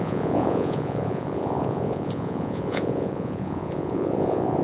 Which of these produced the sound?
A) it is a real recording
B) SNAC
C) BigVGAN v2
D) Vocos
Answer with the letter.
D